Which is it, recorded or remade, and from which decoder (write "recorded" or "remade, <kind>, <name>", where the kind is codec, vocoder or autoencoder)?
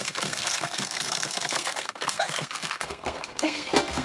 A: remade, codec, SNAC